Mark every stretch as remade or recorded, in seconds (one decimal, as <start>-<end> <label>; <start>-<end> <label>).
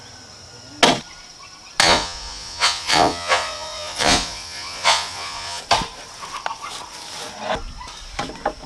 0.0-1.8 recorded; 1.8-5.6 remade; 5.6-8.7 recorded